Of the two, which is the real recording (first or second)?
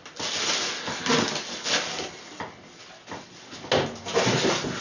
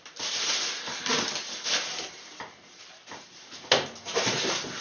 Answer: first